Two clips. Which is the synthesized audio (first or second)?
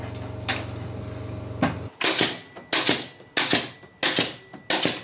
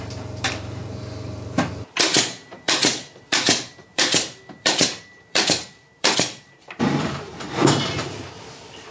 second